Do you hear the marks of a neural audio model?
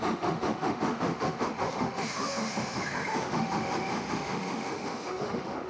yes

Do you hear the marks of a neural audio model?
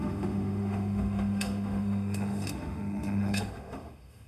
yes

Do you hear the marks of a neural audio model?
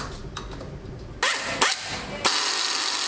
no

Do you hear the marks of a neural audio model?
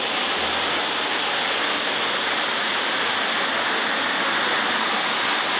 no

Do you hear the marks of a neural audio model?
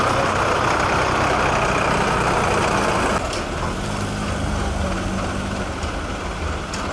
no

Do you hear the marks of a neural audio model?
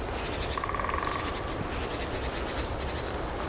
no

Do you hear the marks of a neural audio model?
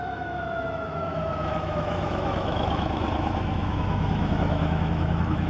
yes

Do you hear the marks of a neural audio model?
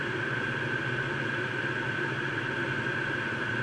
no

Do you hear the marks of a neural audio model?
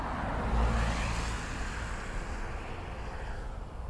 no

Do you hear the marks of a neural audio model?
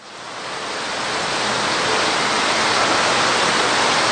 no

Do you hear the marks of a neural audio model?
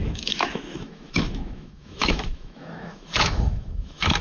yes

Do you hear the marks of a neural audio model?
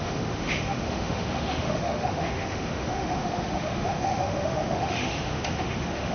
yes